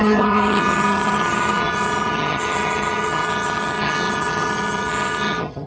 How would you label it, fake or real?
fake